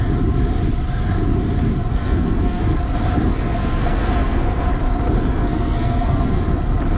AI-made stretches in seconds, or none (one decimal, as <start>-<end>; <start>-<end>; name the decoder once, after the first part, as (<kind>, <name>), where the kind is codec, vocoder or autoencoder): 1.9-2.6 (codec, SNAC); 3.3-4.7; 5.3-6.4